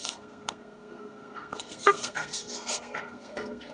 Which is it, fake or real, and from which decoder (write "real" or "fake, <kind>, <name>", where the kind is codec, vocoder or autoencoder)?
fake, codec, SNAC